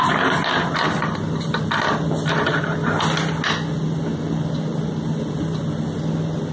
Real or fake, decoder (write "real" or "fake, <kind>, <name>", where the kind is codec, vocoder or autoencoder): real